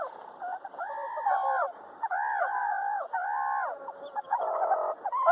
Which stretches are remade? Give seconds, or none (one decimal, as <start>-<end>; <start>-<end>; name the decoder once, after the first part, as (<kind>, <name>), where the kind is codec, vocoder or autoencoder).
0.0-5.3 (vocoder, BigVGAN v2)